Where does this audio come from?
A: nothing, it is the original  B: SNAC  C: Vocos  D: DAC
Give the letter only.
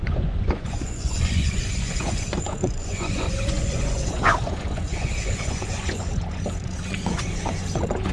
C